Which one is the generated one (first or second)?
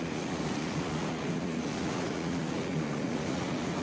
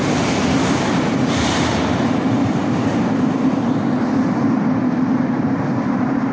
first